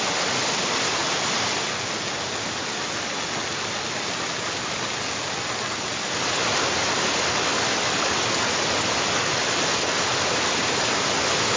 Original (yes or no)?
yes